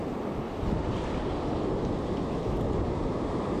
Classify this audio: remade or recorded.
recorded